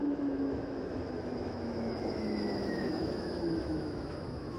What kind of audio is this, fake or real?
fake